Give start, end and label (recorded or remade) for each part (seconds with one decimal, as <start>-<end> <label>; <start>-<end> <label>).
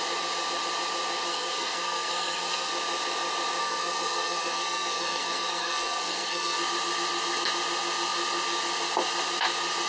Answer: 0.0-1.3 recorded; 1.3-2.7 remade; 2.7-3.6 recorded; 3.6-6.6 remade; 6.6-9.9 recorded